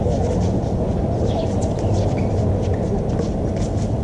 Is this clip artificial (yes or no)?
no